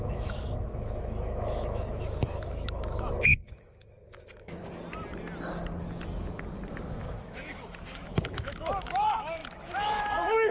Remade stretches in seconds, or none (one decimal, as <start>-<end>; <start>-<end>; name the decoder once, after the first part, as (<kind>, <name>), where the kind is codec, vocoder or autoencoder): 0.0-4.6 (autoencoder, DAC-VAE); 6.7-10.5